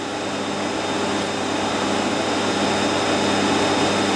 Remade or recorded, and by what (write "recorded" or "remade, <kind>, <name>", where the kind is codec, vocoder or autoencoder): recorded